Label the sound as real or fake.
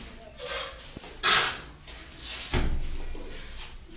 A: real